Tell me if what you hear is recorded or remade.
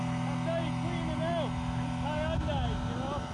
recorded